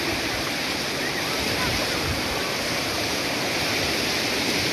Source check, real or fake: real